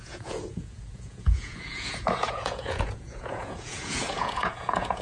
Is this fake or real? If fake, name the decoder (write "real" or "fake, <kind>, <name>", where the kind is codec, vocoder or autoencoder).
fake, vocoder, Vocos